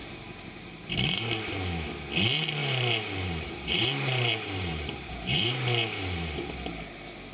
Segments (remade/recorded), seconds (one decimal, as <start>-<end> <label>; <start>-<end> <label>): 0.0-1.5 remade; 1.5-2.6 recorded; 2.6-6.5 remade; 6.5-7.3 recorded